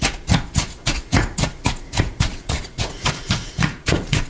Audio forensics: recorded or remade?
remade